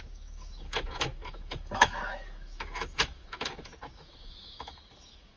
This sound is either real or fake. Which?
fake